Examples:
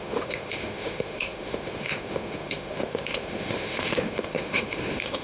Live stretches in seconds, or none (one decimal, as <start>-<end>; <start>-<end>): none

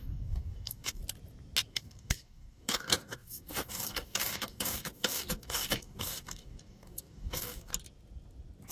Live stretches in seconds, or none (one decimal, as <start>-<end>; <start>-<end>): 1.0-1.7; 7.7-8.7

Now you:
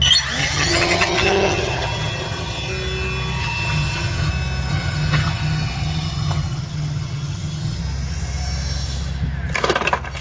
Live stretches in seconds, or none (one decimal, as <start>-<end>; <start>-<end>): 0.0-0.4; 2.7-3.4; 4.3-4.7; 7.8-10.2

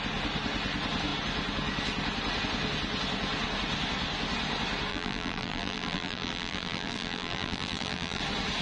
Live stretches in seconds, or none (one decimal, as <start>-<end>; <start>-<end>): 0.0-4.9; 8.2-8.6

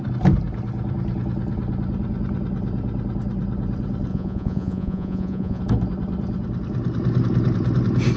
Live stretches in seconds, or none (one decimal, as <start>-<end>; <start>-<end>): 0.0-4.1; 5.6-8.2

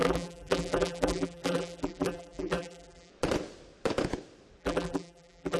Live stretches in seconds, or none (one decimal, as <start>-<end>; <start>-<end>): 3.1-4.6

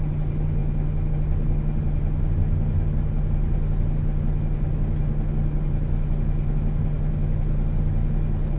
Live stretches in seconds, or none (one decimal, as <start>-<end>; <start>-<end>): 0.0-8.6